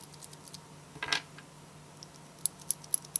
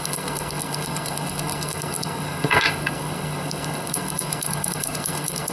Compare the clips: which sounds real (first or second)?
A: first